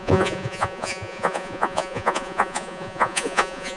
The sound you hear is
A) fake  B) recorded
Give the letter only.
A